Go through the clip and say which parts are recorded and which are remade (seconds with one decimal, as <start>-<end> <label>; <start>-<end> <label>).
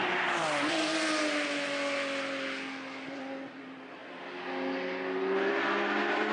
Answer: 0.0-6.3 recorded